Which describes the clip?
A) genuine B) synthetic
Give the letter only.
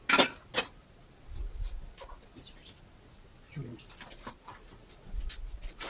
A